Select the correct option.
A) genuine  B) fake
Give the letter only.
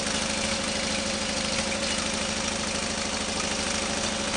A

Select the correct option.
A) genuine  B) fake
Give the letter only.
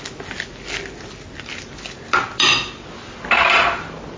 A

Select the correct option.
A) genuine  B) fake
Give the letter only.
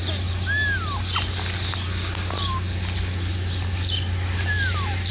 A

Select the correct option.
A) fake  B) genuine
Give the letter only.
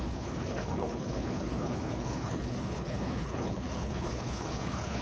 A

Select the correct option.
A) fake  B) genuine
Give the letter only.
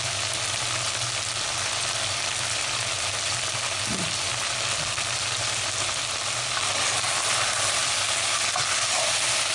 B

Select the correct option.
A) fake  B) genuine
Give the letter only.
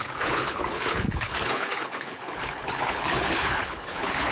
A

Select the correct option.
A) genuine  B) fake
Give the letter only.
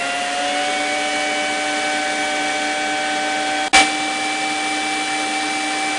A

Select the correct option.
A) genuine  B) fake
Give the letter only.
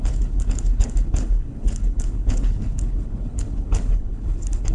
B